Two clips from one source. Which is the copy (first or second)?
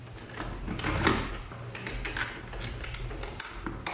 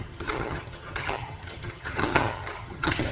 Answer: second